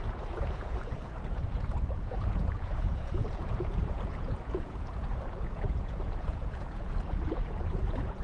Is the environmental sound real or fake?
fake